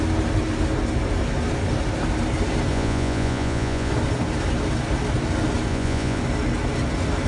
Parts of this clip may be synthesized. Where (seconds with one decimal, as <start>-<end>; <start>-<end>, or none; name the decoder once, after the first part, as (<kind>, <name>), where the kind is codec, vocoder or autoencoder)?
2.7-3.9 (vocoder, Vocos); 5.7-6.2